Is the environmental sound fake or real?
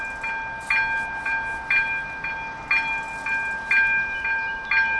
real